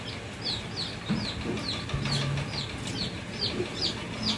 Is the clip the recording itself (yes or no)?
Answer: yes